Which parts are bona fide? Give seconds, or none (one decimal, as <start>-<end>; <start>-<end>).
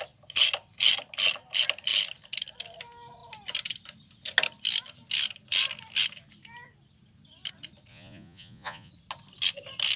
0.0-7.9; 8.9-10.0